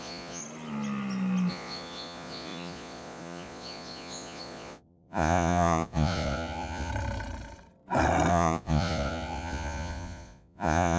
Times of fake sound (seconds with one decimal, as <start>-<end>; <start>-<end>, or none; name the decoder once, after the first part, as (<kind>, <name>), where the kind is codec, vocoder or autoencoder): 0.0-0.4 (vocoder, Vocos); 1.5-6.9; 8.3-11.0